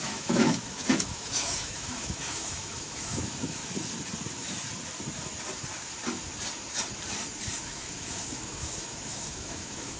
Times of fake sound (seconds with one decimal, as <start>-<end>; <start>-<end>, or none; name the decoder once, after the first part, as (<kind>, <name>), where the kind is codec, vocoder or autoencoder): 0.0-3.6 (autoencoder, DAC-VAE); 7.6-10.0